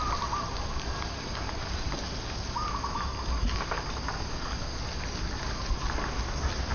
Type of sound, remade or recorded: recorded